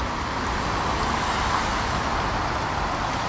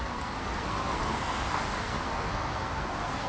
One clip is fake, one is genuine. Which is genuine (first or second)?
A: first